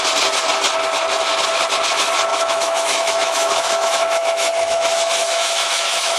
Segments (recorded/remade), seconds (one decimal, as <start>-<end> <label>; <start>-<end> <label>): 0.0-2.3 recorded; 2.3-6.2 remade